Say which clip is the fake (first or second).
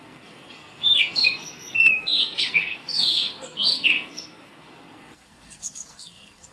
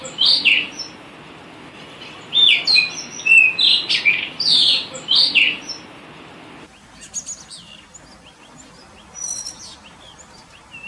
first